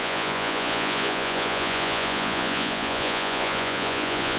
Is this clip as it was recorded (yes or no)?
no